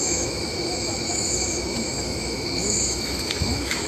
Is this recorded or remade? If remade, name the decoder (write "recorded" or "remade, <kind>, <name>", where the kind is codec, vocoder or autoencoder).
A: remade, autoencoder, DAC-VAE